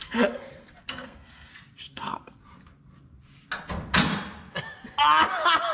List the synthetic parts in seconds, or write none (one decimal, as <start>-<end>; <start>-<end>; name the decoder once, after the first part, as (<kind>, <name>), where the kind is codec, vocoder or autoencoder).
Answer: 0.0-1.5 (codec, SNAC); 1.9-2.4